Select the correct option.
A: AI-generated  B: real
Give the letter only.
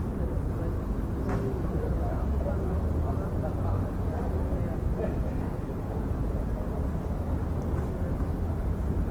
B